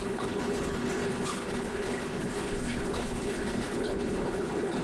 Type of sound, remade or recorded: remade